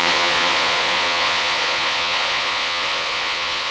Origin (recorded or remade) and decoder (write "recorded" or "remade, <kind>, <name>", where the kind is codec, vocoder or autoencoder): remade, vocoder, Vocos